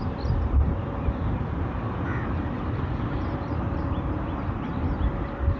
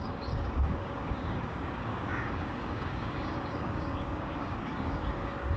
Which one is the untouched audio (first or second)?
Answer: first